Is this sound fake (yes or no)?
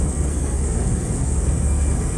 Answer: yes